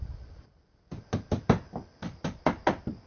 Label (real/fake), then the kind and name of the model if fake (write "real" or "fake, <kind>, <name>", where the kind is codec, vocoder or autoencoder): real